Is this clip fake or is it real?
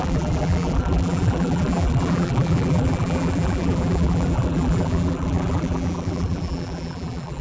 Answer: fake